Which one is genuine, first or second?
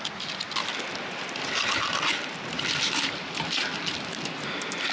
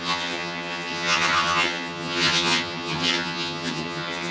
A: first